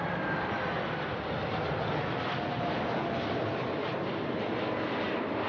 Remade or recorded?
recorded